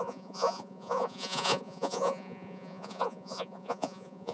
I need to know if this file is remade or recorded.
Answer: remade